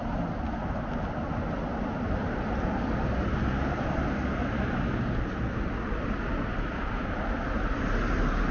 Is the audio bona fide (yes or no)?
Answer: yes